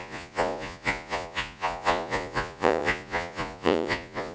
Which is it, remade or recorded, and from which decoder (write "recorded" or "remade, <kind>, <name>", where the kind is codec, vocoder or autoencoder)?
remade, vocoder, Vocos